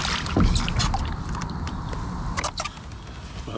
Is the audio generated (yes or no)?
no